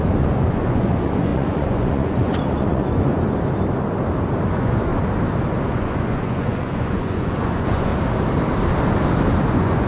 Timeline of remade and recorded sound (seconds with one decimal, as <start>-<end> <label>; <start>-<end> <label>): 0.0-3.1 remade; 3.1-4.5 recorded; 4.5-4.9 remade; 4.9-5.7 recorded; 5.7-7.9 remade; 7.9-9.5 recorded; 9.5-9.9 remade